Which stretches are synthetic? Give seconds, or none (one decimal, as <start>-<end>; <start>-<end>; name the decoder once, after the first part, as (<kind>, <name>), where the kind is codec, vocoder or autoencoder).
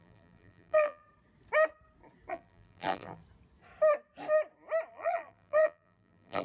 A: 0.0-1.0 (vocoder, BigVGAN v2); 2.3-3.2; 4.9-6.4